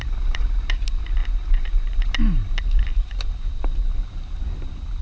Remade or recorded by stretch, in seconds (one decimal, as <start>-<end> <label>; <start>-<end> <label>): 0.0-5.0 recorded